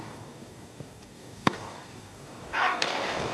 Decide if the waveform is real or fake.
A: fake